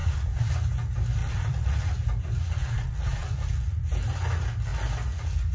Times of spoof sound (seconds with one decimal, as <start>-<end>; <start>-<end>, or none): 0.0-0.5; 1.2-1.9; 2.6-3.8